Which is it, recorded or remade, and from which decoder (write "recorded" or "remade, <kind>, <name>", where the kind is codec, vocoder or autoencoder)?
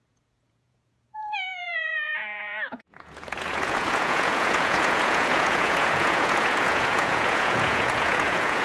remade, vocoder, Vocos